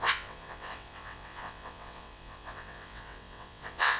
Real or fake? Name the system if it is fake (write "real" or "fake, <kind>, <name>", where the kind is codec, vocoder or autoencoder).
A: fake, vocoder, WaveNeXt